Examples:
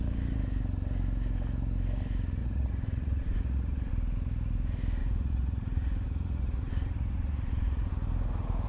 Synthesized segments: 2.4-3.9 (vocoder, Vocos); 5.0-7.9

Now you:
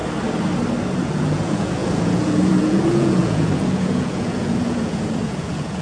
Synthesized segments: 1.0-5.8 (vocoder, Vocos)